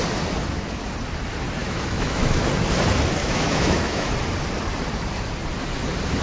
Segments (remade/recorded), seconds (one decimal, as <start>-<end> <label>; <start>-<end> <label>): 0.0-1.6 recorded; 1.6-2.5 remade; 2.5-3.2 recorded; 3.2-4.1 remade; 4.1-6.2 recorded